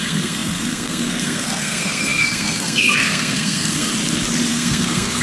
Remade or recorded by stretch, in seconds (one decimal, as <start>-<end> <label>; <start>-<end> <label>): 0.0-3.9 remade; 3.9-4.5 recorded; 4.5-5.2 remade